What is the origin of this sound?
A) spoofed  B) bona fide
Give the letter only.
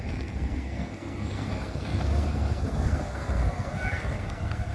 A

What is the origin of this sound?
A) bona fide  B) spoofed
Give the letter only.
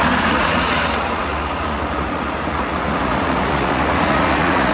B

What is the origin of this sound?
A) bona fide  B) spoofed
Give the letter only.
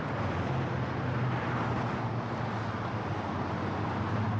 A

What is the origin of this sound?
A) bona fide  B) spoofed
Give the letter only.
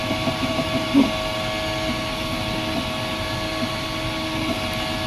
A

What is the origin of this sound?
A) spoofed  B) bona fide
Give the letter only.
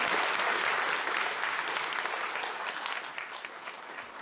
B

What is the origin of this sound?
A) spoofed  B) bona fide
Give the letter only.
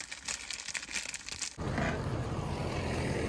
B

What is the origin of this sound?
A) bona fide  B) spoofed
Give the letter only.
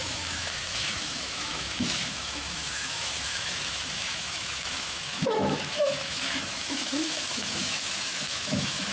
B